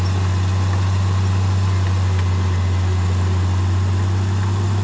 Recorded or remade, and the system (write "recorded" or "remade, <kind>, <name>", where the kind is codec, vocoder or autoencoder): recorded